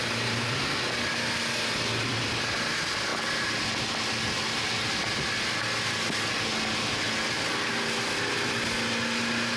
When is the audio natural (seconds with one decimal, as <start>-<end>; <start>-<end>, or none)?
0.0-9.6